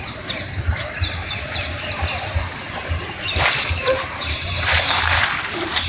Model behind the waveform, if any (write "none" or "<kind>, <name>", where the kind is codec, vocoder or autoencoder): vocoder, BigVGAN v2